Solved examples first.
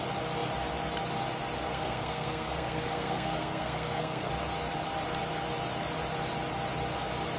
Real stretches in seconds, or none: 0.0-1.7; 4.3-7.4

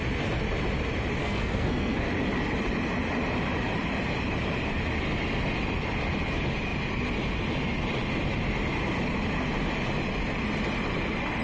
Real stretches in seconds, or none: 0.0-1.2; 2.1-11.4

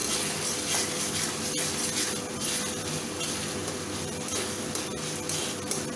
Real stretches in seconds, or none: 0.0-6.0

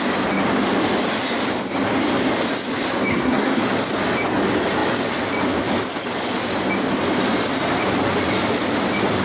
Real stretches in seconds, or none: 0.0-3.1; 3.6-9.2

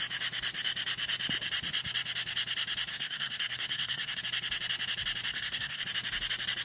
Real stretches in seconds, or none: 0.0-2.9; 4.2-5.3; 5.8-6.6

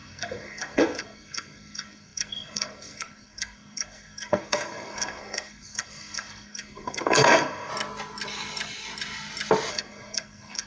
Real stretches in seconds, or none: 7.7-9.7